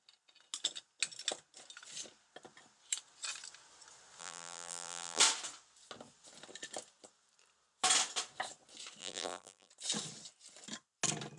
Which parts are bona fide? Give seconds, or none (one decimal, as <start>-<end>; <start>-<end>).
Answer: 0.0-4.2; 5.2-9.0; 9.7-11.4